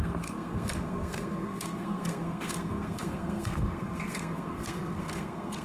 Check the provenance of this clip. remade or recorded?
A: remade